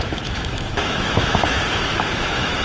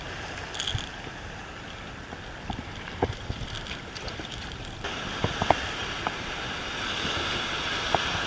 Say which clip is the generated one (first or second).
first